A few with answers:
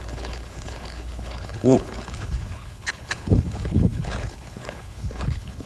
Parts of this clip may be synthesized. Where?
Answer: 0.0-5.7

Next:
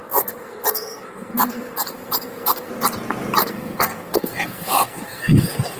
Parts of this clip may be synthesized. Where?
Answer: 0.0-2.7; 3.4-5.8

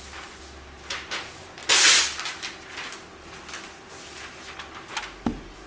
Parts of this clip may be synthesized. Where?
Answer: none

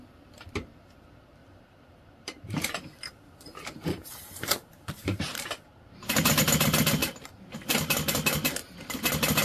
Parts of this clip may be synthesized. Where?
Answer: 1.4-6.4; 7.0-7.5

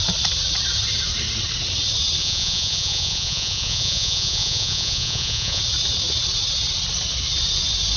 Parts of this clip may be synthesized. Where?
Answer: 2.2-5.6